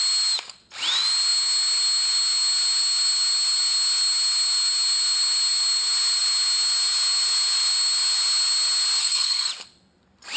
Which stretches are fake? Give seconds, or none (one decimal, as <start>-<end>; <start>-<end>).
9.0-9.5